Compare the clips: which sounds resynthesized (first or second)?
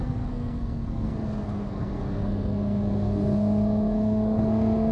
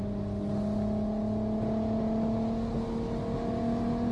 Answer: first